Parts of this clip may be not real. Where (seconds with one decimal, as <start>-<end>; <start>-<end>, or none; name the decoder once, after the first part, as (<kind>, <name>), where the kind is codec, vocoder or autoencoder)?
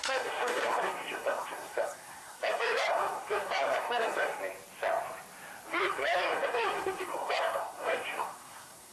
0.0-4.4 (codec, SNAC); 5.7-8.9